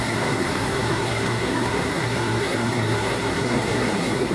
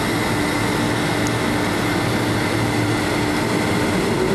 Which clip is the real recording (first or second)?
second